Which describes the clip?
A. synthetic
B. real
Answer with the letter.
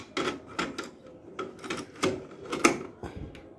B